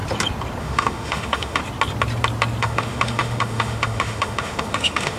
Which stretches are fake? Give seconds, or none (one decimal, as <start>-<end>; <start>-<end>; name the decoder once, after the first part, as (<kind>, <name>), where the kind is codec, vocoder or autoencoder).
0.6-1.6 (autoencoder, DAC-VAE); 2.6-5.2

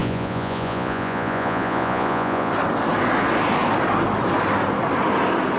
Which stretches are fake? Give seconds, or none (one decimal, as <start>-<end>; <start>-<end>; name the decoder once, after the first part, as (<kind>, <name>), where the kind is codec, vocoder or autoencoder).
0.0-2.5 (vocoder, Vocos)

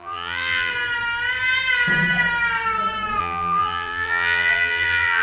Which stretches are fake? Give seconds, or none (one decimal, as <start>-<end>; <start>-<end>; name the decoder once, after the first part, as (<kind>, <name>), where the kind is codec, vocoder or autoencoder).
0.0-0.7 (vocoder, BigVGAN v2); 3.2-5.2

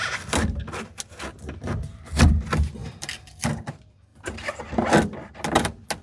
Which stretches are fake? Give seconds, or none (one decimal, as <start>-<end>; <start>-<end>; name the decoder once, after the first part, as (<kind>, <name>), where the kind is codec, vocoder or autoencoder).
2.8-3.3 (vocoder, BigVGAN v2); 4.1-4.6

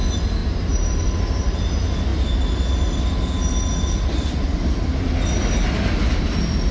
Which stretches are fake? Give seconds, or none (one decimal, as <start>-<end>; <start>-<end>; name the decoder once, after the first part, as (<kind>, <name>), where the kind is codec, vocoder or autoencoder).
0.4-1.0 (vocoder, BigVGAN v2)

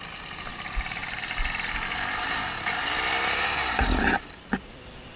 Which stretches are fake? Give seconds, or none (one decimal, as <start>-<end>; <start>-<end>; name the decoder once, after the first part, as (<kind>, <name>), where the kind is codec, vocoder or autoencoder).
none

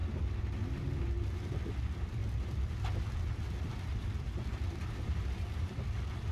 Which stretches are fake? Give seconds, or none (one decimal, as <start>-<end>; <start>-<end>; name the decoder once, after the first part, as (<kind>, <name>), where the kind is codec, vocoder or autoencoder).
3.7-6.3 (vocoder, BigVGAN v2)